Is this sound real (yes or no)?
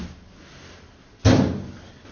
yes